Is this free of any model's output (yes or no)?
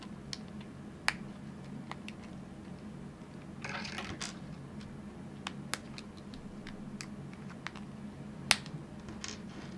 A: yes